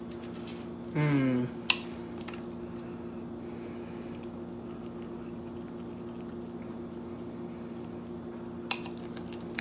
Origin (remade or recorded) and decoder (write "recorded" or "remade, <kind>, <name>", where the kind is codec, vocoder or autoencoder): recorded